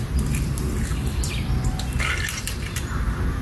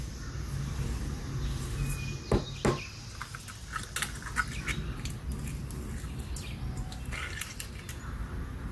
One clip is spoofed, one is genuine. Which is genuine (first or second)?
second